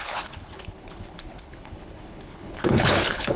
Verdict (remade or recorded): remade